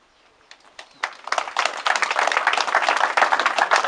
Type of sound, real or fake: real